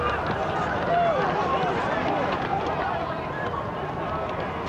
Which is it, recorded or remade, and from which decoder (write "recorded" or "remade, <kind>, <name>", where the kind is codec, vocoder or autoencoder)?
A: recorded